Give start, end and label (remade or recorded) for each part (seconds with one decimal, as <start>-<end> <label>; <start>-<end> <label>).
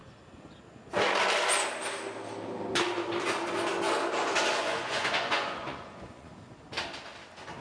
0.0-4.6 recorded; 4.6-6.3 remade; 6.3-7.6 recorded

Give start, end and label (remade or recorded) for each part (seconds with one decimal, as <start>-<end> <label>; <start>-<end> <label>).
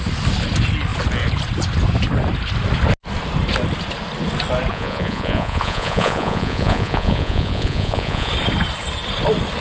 0.0-4.7 recorded; 4.7-8.3 remade; 8.3-9.6 recorded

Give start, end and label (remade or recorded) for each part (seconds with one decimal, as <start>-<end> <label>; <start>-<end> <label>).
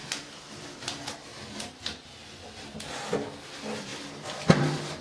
0.0-5.0 recorded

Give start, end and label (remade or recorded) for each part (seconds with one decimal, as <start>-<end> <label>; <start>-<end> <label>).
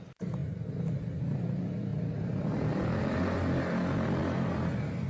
0.0-5.1 recorded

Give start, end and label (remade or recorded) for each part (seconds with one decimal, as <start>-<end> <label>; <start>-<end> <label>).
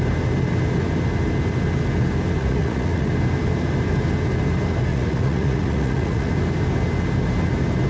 0.0-2.4 recorded; 2.4-3.1 remade; 3.1-4.9 recorded; 4.9-6.3 remade; 6.3-7.9 recorded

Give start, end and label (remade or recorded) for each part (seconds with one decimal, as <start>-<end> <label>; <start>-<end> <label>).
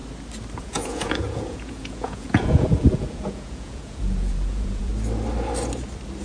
0.0-0.6 recorded; 0.6-4.9 remade; 4.9-6.2 recorded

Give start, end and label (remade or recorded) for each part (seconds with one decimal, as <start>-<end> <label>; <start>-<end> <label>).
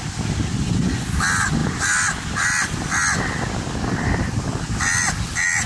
0.0-0.5 recorded; 0.5-1.1 remade; 1.1-5.7 recorded